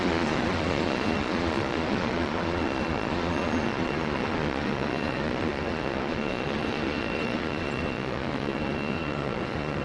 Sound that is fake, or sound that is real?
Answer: fake